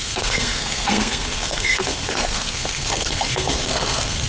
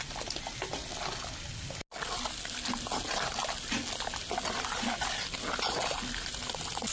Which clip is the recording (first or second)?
second